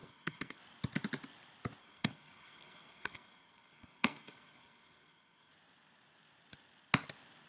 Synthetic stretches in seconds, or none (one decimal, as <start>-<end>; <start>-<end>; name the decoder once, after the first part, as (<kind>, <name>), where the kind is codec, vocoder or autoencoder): 0.0-0.6 (codec, SNAC); 1.8-5.5